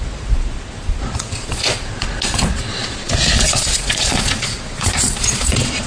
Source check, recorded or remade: remade